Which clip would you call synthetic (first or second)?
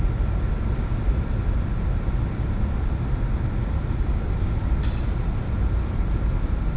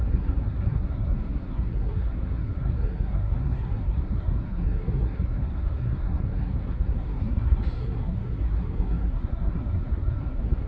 second